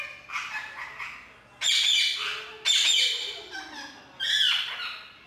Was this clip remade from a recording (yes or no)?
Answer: no